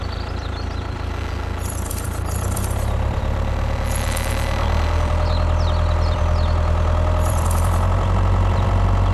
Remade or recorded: remade